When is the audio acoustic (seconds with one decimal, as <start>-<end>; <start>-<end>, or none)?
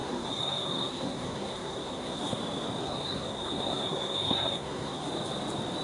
2.4-2.8; 5.1-5.8